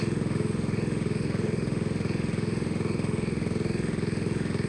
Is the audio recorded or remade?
remade